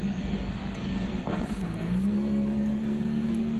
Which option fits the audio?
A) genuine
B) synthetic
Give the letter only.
B